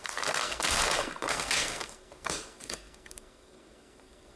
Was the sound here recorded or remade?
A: remade